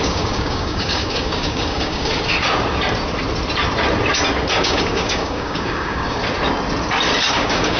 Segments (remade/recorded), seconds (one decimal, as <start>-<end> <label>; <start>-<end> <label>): 0.0-2.1 remade; 2.1-4.6 recorded; 4.6-6.2 remade; 6.2-7.3 recorded; 7.3-7.8 remade